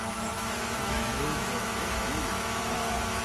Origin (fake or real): fake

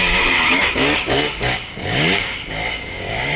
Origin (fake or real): fake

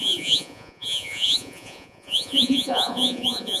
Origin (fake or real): fake